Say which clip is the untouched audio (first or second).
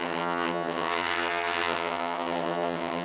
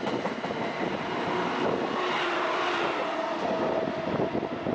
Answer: second